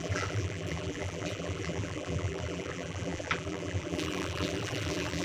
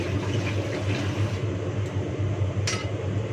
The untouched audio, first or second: second